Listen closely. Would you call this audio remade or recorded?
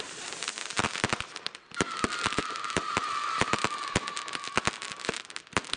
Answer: recorded